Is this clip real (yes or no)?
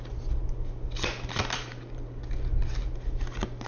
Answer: yes